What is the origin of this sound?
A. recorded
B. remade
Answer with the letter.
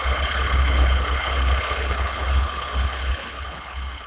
B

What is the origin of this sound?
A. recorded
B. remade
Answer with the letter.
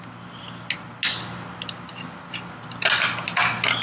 A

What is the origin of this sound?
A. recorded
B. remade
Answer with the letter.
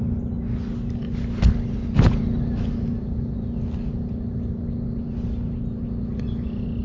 A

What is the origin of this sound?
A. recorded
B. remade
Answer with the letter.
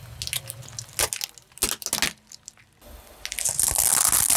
A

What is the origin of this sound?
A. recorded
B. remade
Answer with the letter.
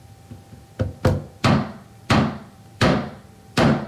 B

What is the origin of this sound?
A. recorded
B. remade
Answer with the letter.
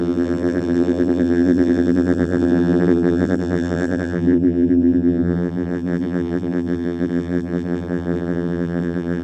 B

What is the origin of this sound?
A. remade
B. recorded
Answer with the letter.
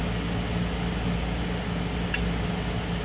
B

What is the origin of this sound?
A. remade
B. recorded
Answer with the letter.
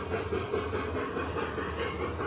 B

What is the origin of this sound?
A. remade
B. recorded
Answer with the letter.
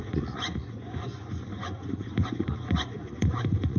A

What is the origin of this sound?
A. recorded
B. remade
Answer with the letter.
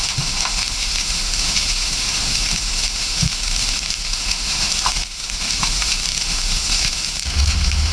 B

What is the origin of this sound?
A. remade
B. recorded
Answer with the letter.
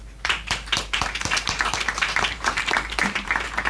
A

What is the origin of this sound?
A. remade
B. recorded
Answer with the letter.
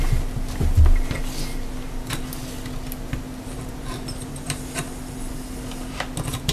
B